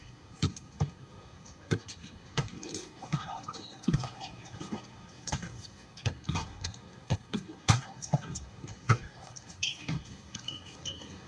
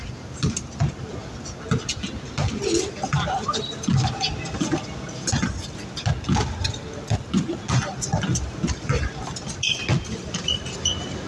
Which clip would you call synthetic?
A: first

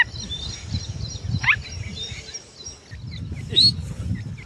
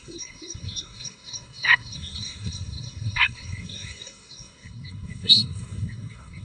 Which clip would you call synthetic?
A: second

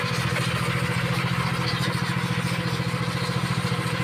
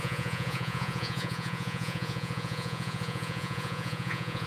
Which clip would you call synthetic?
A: second